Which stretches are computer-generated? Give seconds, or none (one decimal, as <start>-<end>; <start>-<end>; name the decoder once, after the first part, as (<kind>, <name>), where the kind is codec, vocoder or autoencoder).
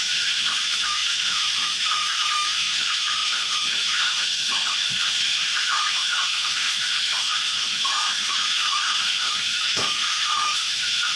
0.0-11.2 (autoencoder, DAC-VAE)